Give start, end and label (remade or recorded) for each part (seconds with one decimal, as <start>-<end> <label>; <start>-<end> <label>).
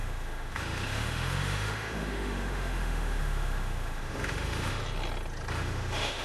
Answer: 0.0-4.8 remade; 4.8-5.5 recorded; 5.5-6.2 remade